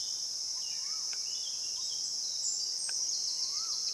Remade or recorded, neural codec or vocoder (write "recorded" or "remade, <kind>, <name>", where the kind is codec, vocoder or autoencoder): recorded